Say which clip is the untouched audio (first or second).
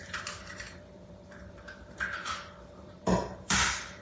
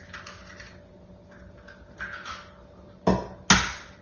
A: second